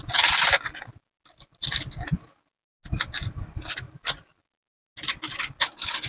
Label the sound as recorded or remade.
recorded